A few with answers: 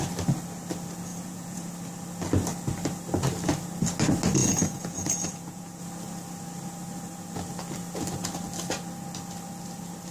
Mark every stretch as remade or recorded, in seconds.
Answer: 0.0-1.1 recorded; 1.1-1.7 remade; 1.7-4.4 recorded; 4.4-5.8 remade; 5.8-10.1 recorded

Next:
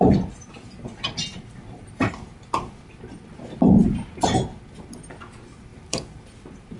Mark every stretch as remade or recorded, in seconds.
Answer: 0.0-1.3 recorded; 1.3-2.1 remade; 2.1-5.7 recorded; 5.7-6.2 remade; 6.2-6.8 recorded